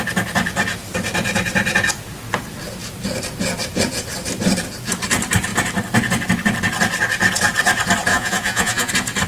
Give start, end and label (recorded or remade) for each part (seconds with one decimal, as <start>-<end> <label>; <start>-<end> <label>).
0.0-8.1 recorded; 8.1-8.9 remade; 8.9-9.3 recorded

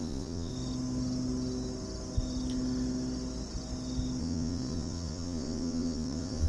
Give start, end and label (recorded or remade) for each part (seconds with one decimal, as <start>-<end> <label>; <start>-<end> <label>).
0.0-0.5 remade; 0.5-4.2 recorded; 4.2-6.5 remade

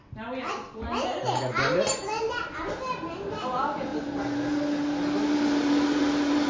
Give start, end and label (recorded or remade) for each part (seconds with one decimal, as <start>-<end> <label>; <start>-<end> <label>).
0.0-6.5 recorded

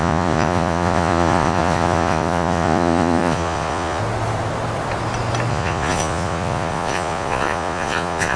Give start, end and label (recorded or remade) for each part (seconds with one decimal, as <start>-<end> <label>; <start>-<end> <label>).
0.0-4.0 remade; 4.0-5.5 recorded; 5.5-8.4 remade

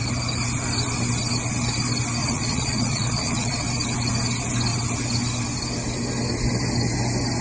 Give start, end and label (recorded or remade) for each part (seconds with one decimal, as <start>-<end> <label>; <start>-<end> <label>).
0.0-2.2 recorded; 2.2-3.7 remade; 3.7-7.4 recorded